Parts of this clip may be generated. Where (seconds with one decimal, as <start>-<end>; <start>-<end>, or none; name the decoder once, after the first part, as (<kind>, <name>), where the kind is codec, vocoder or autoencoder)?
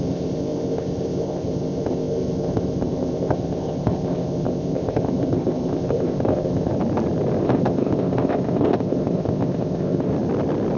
0.0-6.7 (codec, ZipCodec); 7.4-10.1